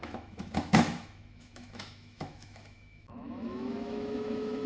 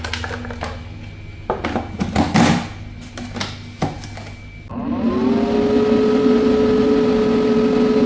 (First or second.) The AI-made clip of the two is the first